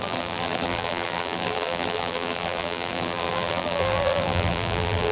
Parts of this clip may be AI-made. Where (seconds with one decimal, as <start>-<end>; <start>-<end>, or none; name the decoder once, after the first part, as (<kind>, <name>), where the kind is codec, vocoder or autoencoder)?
0.0-5.1 (vocoder, BigVGAN v2)